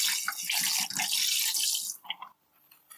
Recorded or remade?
recorded